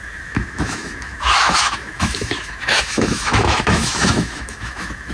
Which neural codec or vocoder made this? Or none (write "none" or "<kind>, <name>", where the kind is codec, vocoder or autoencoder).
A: autoencoder, DAC-VAE